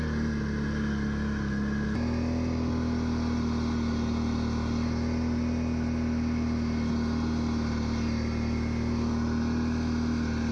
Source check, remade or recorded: recorded